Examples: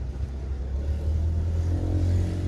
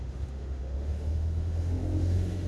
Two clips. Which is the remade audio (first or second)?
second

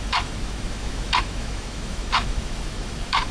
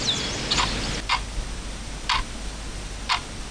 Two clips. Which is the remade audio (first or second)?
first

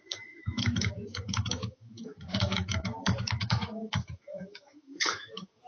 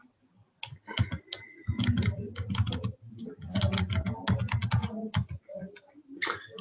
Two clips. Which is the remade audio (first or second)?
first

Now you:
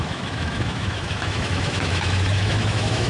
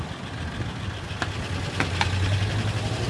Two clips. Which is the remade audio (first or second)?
first